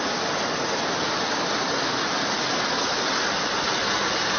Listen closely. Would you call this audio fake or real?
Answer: real